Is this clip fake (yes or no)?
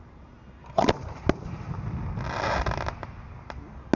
no